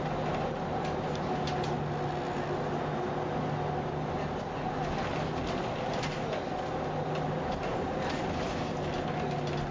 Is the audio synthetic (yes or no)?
no